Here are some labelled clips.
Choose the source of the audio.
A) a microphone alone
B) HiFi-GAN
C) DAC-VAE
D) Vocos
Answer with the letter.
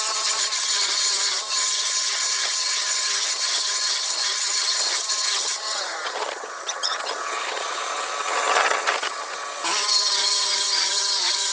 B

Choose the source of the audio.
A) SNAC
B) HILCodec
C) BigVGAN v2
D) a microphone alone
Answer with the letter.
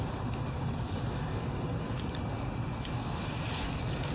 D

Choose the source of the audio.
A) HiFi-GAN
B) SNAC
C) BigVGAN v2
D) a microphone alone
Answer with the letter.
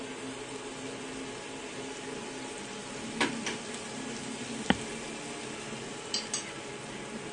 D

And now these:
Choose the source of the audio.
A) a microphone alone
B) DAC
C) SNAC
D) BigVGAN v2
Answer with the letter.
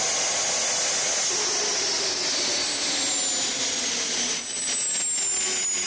A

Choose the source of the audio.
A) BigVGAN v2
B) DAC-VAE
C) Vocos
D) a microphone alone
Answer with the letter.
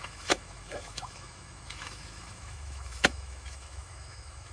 B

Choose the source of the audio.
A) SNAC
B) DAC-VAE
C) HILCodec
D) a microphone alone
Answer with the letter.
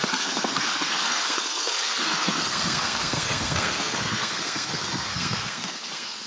A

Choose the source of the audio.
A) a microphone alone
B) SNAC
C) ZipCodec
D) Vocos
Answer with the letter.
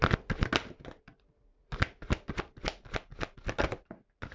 A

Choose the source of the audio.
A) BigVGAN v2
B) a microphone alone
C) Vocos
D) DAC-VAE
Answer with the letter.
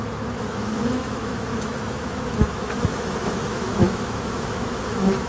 D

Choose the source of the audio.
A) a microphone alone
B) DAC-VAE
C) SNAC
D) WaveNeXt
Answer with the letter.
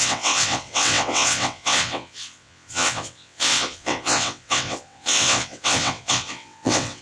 D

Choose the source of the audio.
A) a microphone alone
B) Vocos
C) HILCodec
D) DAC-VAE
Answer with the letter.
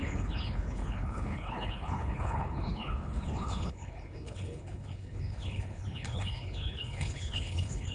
C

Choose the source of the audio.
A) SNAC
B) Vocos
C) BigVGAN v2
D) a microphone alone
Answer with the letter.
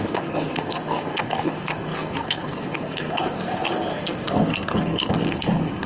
A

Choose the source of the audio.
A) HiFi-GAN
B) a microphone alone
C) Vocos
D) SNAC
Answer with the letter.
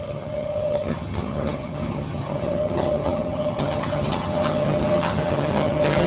A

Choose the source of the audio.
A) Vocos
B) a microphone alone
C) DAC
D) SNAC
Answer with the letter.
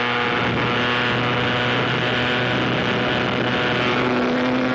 B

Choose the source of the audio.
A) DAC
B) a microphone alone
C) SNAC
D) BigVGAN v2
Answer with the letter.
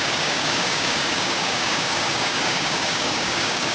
A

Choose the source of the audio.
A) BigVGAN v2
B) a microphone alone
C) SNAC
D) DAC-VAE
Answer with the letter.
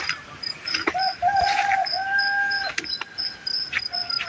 B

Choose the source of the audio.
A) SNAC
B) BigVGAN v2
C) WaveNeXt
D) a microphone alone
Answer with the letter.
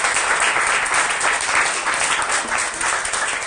D